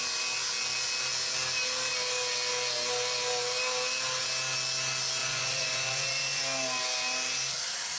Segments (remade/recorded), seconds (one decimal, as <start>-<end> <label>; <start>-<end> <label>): 0.0-5.2 recorded; 5.2-6.4 remade; 6.4-8.0 recorded